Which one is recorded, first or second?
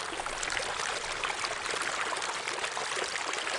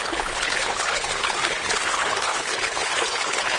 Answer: first